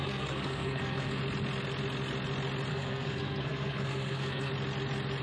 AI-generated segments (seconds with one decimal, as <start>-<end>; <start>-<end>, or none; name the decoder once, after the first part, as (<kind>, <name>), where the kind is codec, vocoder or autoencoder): 0.0-1.2 (codec, SNAC); 2.7-4.5